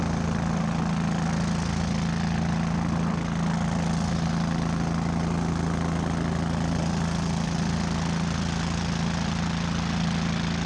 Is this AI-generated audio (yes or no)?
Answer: no